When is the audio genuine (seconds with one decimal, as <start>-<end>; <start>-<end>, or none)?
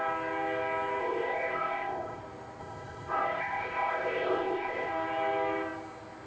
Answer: 0.0-1.0; 2.2-2.6; 4.9-6.3